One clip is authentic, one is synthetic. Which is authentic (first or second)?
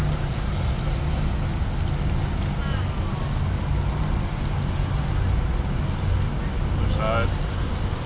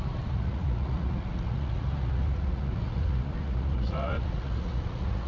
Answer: first